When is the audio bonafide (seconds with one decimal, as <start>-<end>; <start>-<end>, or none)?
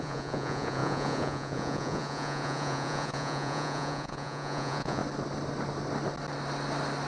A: 5.0-7.1